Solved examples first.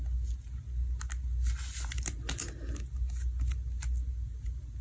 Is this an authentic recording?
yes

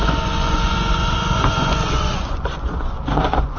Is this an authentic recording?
no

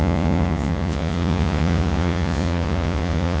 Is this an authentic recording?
no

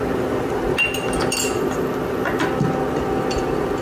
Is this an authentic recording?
yes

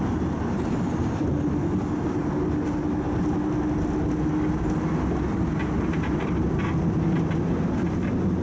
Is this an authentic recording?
yes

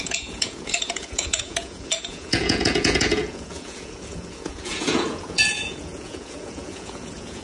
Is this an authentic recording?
no